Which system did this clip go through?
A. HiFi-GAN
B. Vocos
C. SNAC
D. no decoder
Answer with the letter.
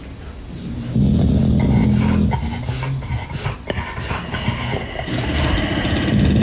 D